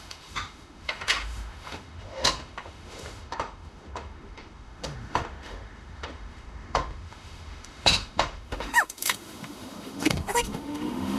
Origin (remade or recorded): remade